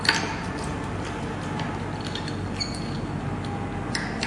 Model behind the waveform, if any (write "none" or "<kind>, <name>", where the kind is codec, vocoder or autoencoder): none